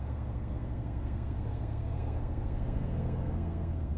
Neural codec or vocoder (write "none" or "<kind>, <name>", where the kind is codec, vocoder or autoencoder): codec, SNAC